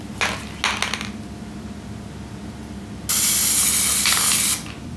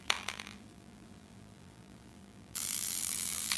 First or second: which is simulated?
second